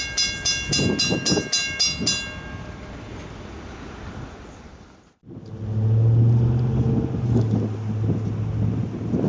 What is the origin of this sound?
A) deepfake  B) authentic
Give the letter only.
B